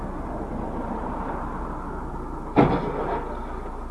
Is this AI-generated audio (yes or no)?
no